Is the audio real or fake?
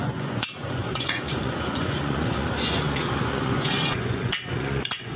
fake